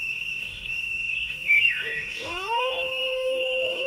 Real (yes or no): no